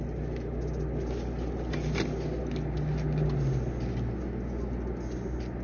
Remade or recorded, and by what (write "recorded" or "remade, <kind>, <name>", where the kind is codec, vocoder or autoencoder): recorded